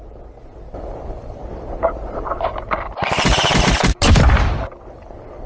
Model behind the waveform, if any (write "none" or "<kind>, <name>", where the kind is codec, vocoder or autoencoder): none